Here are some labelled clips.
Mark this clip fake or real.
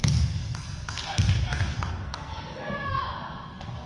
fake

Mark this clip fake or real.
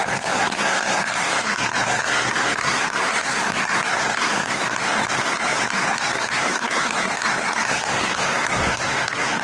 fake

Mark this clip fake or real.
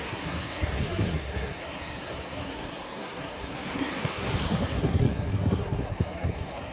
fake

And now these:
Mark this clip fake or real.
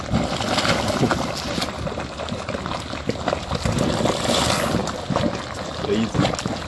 real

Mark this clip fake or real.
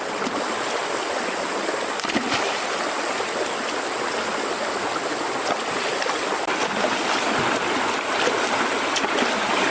real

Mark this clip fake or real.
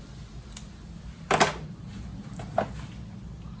real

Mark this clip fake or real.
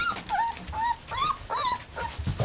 real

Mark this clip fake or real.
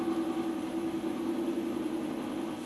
real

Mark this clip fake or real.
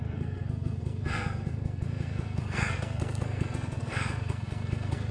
fake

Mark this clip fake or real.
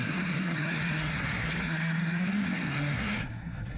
fake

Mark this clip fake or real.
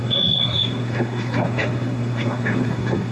fake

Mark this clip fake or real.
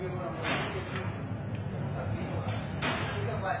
real